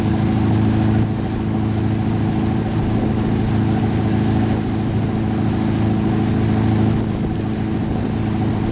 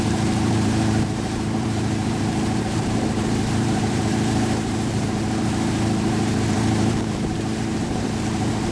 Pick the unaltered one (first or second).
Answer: first